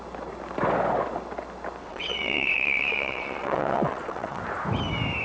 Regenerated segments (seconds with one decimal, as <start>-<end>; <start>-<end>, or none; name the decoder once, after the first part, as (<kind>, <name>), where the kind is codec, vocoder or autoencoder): 1.8-4.4 (vocoder, WaveNeXt)